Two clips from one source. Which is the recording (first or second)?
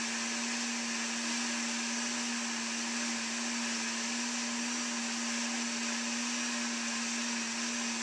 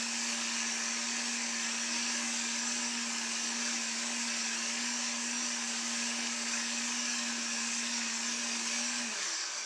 first